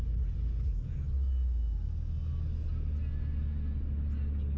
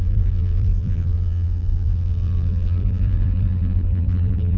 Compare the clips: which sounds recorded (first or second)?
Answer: first